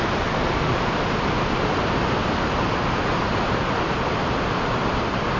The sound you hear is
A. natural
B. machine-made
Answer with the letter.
A